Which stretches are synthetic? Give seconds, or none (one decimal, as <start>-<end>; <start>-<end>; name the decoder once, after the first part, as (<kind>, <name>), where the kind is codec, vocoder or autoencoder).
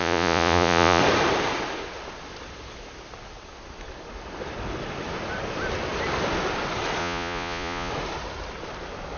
0.0-1.0 (vocoder, Vocos); 7.0-7.9